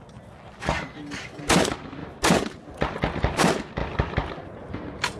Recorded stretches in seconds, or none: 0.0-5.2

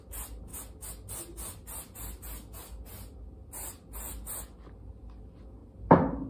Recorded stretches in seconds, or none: 0.0-6.3

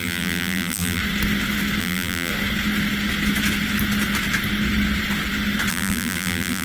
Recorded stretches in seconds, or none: 1.0-1.8; 2.3-5.7

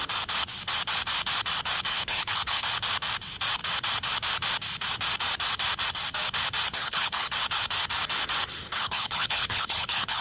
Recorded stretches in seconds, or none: 0.0-1.9; 2.6-6.7; 7.3-8.6

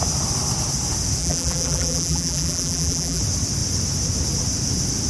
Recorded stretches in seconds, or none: 0.0-1.2; 3.2-5.1

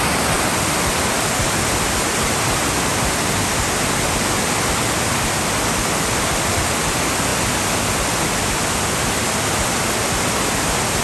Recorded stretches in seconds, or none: 0.0-11.0